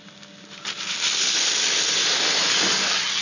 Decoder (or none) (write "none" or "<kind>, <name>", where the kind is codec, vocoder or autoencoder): none